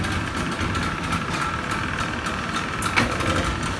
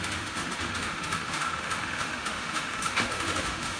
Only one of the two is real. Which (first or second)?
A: first